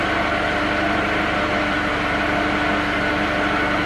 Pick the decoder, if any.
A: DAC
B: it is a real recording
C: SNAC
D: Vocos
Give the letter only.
B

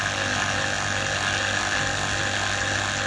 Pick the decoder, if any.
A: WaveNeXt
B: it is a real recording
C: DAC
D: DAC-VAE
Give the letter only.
B